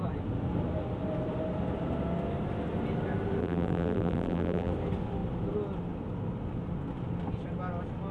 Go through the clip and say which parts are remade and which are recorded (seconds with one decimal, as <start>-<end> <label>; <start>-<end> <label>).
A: 0.0-3.4 recorded; 3.4-4.7 remade; 4.7-8.1 recorded